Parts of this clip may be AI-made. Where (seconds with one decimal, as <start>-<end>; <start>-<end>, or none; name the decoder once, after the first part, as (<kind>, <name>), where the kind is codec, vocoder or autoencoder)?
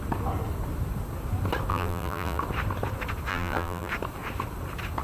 1.7-2.4 (vocoder, BigVGAN v2); 3.3-3.9